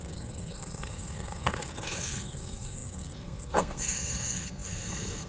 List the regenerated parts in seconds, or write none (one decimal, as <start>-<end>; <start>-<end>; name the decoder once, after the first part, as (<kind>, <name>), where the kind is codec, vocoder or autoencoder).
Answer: 0.0-5.3 (codec, SNAC)